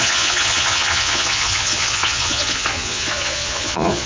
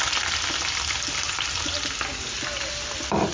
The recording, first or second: second